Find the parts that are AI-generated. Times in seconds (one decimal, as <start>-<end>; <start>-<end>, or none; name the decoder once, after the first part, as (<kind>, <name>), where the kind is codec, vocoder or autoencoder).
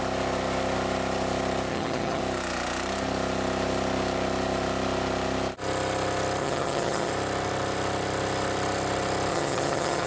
1.7-2.2 (vocoder, HiFi-GAN); 6.4-7.1; 9.3-10.1